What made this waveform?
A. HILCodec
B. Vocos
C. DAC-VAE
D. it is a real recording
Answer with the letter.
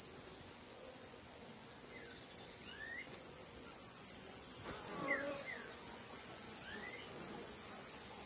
B